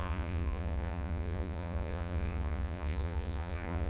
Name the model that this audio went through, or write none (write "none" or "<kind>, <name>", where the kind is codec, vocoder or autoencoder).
vocoder, Vocos